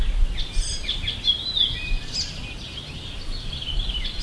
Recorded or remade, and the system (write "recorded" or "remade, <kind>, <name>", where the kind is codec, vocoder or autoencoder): recorded